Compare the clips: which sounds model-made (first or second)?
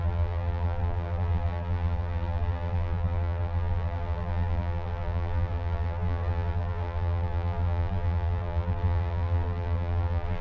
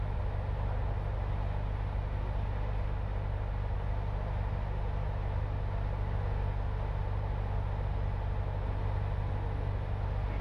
first